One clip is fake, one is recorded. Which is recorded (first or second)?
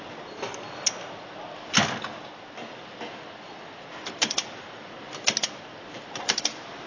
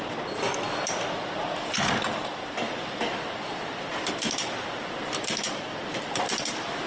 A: first